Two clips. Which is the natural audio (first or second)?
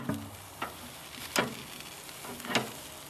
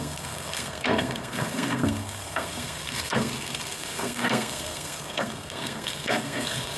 first